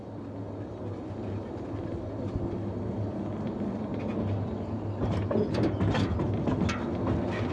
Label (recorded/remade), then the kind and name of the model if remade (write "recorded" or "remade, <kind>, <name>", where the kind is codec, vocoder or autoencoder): recorded